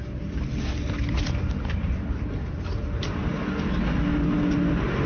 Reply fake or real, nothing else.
real